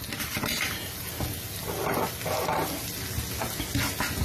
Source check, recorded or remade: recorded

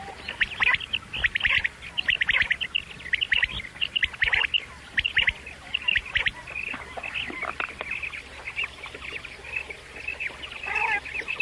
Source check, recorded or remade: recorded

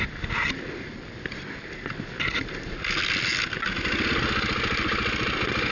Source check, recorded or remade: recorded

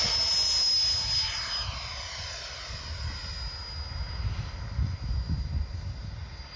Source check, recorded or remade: recorded